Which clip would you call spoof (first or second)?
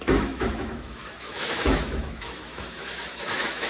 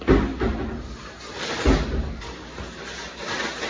first